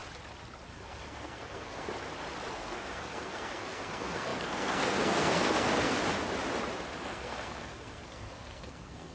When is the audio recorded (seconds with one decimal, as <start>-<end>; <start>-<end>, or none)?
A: 0.0-0.7; 1.9-2.5; 6.0-7.0